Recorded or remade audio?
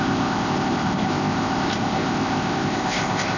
remade